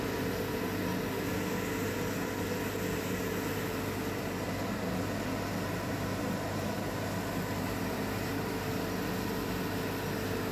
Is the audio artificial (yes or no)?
no